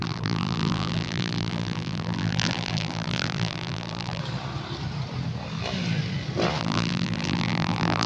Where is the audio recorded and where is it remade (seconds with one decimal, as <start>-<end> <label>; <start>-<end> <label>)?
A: 0.0-4.2 remade; 4.2-6.6 recorded; 6.6-8.1 remade